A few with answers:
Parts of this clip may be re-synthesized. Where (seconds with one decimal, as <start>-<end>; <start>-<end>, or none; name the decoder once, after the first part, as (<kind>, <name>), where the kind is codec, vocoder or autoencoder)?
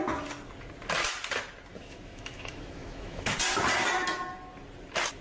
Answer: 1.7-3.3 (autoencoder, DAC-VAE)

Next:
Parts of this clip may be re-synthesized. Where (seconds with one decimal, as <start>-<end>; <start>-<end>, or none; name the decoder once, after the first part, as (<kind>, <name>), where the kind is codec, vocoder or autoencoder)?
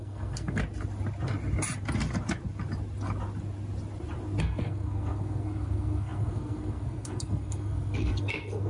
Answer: 0.0-0.6 (codec, SNAC); 4.4-8.7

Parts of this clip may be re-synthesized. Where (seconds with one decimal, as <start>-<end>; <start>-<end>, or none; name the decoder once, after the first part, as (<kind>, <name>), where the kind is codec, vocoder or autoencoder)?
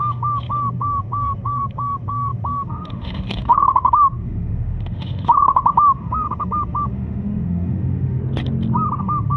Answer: 0.0-8.2 (autoencoder, DAC-VAE); 9.0-9.4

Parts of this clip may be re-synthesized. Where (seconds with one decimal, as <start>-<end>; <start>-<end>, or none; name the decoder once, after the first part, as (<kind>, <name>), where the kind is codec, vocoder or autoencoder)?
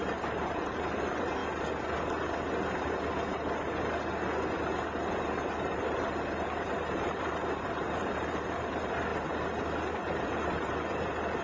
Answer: 0.0-1.4 (vocoder, BigVGAN v2); 5.2-9.1; 10.1-11.4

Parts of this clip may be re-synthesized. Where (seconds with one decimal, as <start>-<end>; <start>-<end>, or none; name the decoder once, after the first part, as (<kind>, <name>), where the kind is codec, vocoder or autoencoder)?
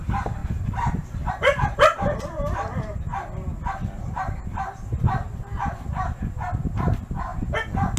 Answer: 0.0-0.4 (vocoder, BigVGAN v2); 1.3-3.1; 3.7-7.3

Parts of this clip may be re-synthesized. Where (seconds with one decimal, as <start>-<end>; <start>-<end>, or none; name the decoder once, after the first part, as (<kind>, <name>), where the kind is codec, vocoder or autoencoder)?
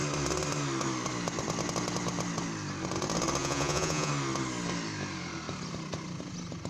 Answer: 3.4-4.1 (vocoder, Vocos)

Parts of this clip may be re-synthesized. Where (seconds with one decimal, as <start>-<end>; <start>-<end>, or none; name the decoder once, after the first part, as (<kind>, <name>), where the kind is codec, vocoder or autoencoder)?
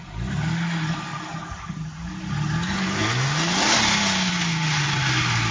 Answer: none